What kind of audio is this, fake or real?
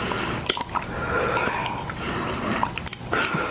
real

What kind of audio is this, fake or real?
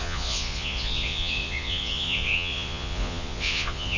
fake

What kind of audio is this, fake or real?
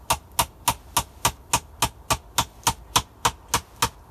real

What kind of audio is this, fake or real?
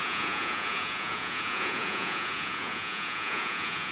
fake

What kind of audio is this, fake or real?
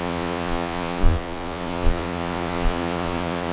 fake